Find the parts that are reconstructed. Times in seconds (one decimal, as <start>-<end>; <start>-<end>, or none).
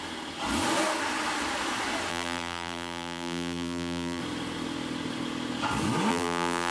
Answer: 2.1-4.2; 6.1-6.7